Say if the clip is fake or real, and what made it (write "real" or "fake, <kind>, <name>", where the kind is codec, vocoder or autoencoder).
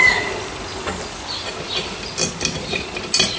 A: real